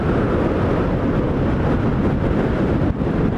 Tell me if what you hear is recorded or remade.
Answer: recorded